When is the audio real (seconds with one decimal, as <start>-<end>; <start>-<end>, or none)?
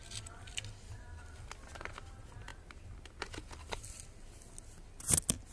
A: 0.0-5.5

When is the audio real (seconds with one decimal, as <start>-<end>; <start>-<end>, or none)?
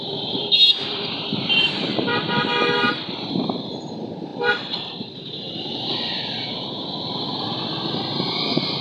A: 2.1-2.6